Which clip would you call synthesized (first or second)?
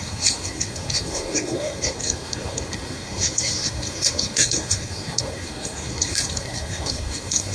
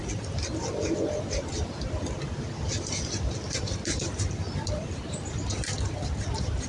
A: first